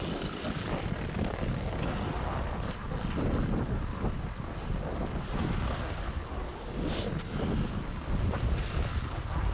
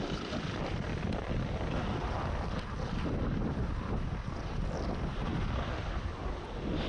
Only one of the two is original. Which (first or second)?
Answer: first